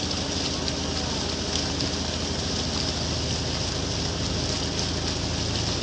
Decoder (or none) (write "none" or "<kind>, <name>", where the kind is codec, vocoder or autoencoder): none